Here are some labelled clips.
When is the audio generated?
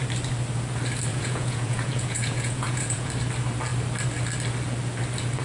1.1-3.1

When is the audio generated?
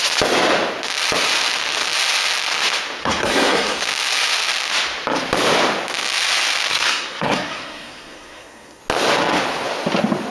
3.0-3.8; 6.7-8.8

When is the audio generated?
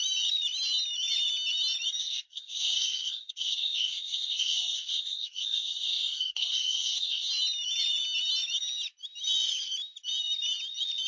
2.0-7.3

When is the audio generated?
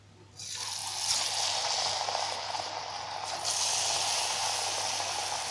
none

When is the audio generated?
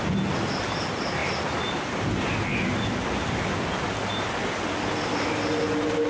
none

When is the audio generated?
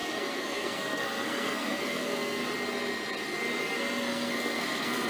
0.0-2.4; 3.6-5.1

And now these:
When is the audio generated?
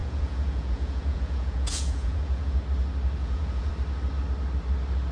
0.0-2.6; 3.2-3.7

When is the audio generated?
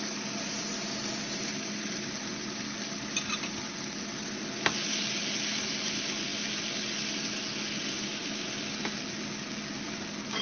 none